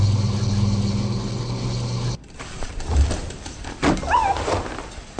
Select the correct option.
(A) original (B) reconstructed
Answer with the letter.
A